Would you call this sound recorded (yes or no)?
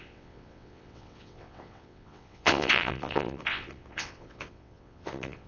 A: no